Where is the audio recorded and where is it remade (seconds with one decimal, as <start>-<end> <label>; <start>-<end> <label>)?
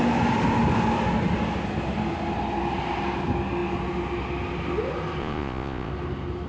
0.0-5.2 recorded; 5.2-5.9 remade; 5.9-6.5 recorded